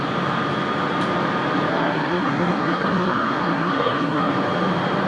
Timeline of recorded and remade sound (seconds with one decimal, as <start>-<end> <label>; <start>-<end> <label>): 0.0-1.7 recorded; 1.7-4.3 remade; 4.3-5.1 recorded